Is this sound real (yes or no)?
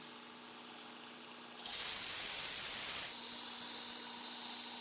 yes